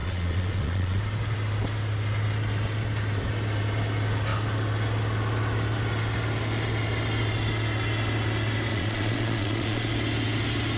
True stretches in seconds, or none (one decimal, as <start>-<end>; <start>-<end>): 1.0-8.7; 9.9-10.8